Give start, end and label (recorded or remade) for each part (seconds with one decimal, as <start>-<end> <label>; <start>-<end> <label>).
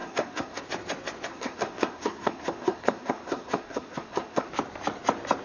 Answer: 0.0-0.6 remade; 0.6-1.3 recorded; 1.3-4.5 remade; 4.5-5.4 recorded